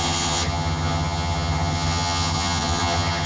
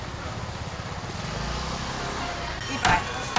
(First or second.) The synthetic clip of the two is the first